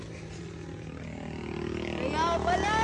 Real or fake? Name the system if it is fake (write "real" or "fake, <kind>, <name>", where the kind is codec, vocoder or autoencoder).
real